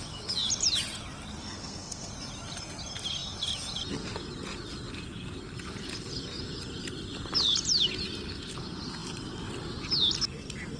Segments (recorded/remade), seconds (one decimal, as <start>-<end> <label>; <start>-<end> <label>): 0.0-1.4 recorded; 1.4-2.1 remade; 2.1-10.8 recorded